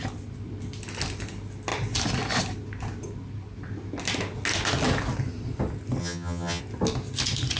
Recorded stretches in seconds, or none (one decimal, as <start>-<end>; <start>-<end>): 0.0-6.0; 6.6-7.6